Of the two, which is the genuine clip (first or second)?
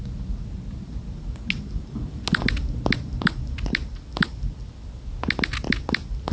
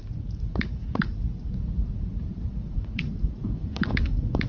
first